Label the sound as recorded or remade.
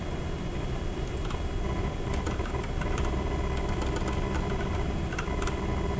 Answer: recorded